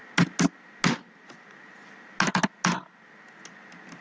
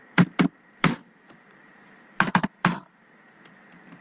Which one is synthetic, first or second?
second